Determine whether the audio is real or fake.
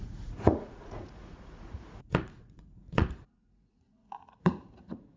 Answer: fake